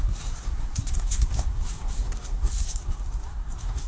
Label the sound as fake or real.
fake